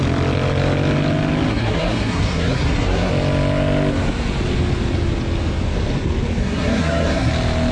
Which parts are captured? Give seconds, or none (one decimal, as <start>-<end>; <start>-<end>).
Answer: 0.0-1.5; 3.1-6.4; 7.3-7.7